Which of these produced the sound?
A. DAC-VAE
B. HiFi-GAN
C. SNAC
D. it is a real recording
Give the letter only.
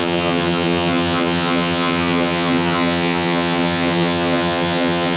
B